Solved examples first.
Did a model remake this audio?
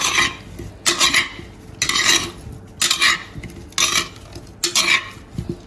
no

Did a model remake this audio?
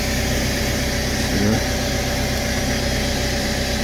no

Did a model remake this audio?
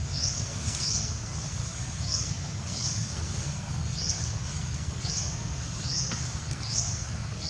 yes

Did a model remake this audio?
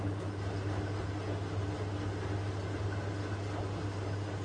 no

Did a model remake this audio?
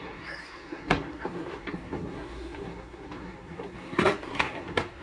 yes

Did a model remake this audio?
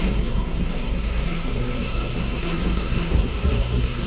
yes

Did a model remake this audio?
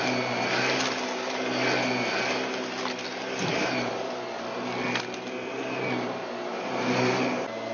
no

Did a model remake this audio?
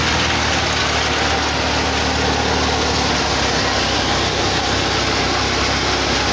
no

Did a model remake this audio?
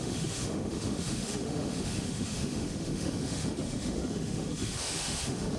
yes